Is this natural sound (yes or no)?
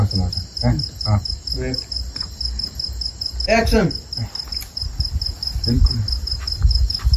yes